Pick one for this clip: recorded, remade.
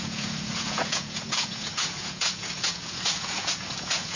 remade